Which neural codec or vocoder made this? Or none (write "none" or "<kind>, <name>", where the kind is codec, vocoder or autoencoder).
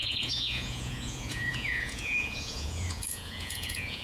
vocoder, Vocos